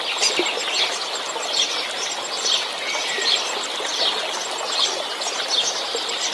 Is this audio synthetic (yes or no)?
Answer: no